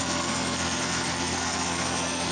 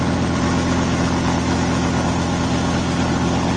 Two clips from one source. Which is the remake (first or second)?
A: first